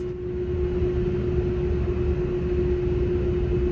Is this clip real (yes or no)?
yes